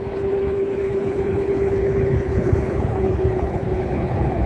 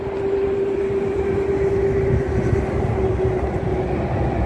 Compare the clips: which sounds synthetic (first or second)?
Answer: first